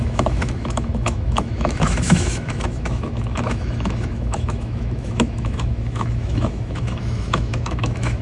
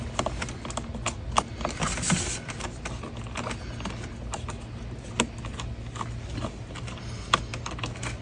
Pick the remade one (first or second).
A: first